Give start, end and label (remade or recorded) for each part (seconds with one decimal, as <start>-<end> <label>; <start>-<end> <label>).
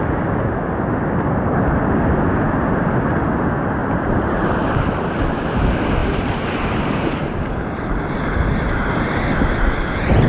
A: 0.0-3.8 recorded; 3.8-4.7 remade; 4.7-6.0 recorded; 6.0-8.0 remade; 8.0-10.3 recorded